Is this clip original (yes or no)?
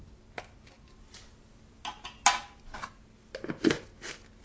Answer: yes